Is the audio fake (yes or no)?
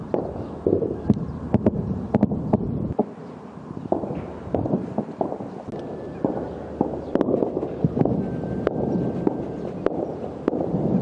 no